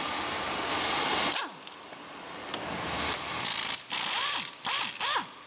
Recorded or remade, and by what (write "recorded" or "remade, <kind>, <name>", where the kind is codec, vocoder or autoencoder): recorded